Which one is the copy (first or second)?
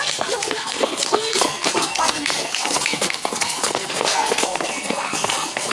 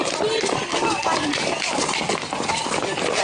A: first